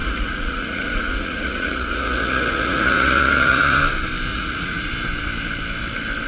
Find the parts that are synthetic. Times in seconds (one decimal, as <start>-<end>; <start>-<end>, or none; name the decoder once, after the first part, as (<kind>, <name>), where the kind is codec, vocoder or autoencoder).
0.0-3.8 (vocoder, Vocos); 4.3-4.9